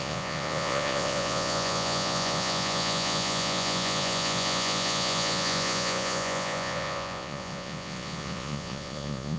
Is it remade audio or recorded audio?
remade